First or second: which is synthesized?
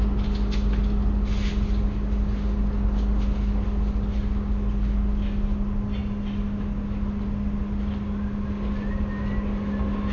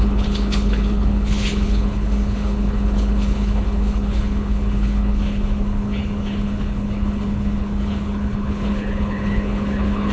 second